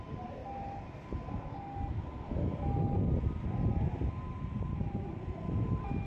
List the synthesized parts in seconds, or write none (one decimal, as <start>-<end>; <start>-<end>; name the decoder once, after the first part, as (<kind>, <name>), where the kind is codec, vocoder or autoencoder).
0.0-0.4 (vocoder, BigVGAN v2); 4.1-6.1